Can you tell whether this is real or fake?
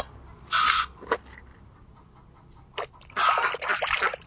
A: real